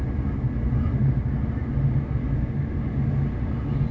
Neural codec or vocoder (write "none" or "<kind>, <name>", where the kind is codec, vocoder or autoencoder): none